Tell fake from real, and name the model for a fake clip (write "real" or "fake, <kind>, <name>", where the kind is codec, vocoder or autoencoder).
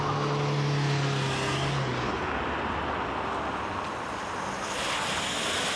real